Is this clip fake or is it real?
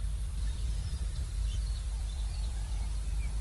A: fake